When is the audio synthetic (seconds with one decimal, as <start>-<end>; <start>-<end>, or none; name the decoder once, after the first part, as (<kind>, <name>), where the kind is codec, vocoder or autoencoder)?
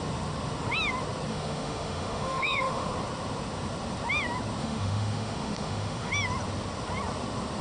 1.3-2.9 (autoencoder, DAC-VAE); 4.6-6.1